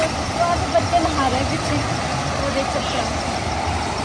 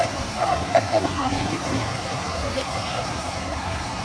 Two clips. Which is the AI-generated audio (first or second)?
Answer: second